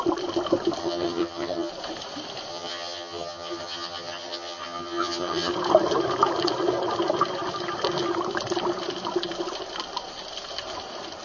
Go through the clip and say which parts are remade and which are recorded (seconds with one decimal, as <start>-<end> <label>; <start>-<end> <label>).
0.0-0.8 recorded; 0.8-1.7 remade; 1.7-2.5 recorded; 2.5-5.5 remade; 5.5-11.2 recorded

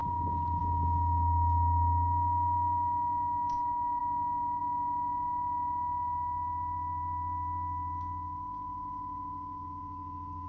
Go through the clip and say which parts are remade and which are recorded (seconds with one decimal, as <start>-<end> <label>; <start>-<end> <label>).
0.0-0.6 recorded; 0.6-10.5 remade

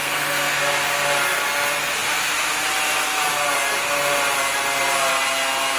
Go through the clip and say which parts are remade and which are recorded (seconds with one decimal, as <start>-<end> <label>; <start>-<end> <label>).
0.0-0.6 remade; 0.6-5.8 recorded